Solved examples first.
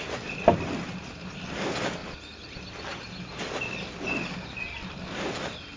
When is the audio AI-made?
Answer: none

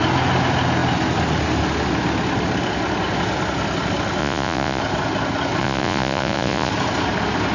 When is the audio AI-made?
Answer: 4.2-4.8 (vocoder, Vocos); 5.6-6.7

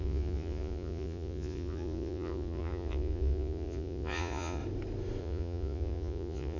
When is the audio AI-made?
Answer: 0.0-4.6 (vocoder, Vocos); 5.2-6.6

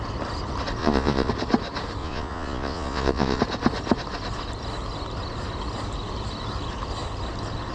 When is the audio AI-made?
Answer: 0.8-1.3 (vocoder, Vocos); 2.0-3.4

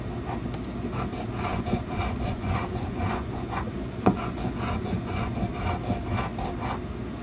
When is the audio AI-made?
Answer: 1.5-5.4 (vocoder, Vocos)

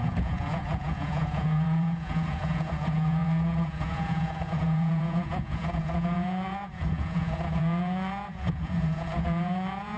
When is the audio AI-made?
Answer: 0.0-10.0 (vocoder, Vocos)

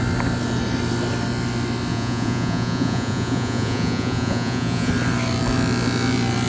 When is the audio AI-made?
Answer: 1.9-4.9 (vocoder, Vocos)